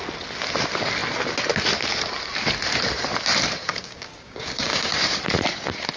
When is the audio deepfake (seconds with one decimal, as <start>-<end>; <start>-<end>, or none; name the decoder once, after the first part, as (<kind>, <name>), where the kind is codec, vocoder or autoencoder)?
3.6-5.2 (codec, DAC)